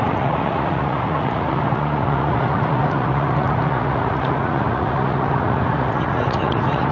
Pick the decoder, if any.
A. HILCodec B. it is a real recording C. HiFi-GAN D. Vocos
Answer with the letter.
D